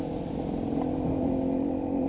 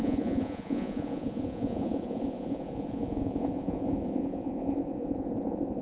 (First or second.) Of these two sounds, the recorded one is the first